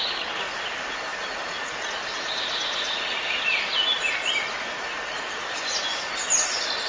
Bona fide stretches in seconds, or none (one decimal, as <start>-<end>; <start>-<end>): 0.0-6.9